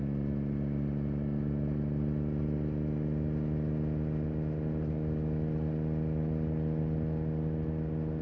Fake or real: real